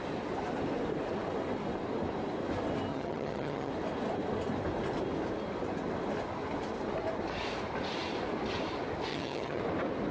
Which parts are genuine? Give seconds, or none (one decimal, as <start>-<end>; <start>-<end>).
0.0-2.9; 3.7-9.1; 9.6-10.1